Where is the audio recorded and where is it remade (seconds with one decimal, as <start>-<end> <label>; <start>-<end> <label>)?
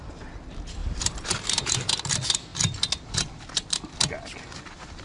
0.0-0.8 recorded; 0.8-1.7 remade; 1.7-5.0 recorded